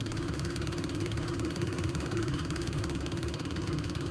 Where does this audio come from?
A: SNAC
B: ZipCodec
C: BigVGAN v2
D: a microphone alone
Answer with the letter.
A